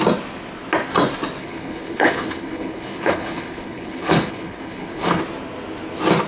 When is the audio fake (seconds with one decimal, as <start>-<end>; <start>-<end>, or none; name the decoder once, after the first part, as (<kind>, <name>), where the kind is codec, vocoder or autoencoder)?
1.4-5.2 (codec, HILCodec)